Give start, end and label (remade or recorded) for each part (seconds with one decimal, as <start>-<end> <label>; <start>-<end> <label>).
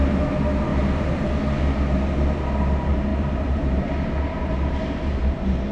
0.0-0.7 recorded; 0.7-1.3 remade; 1.3-3.1 recorded; 3.1-5.7 remade